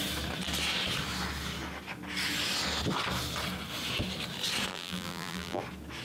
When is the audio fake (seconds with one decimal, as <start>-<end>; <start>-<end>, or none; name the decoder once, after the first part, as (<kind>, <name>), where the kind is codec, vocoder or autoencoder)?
4.7-5.6 (vocoder, BigVGAN v2)